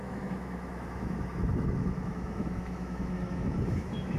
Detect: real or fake fake